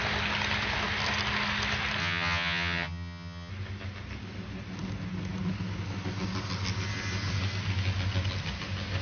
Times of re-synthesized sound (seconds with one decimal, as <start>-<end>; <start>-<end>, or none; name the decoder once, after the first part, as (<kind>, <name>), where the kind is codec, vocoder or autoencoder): 2.0-3.5 (vocoder, HiFi-GAN)